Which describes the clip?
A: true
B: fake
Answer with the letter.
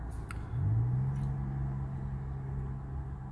A